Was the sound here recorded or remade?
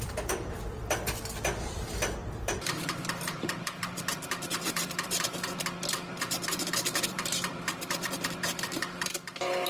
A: remade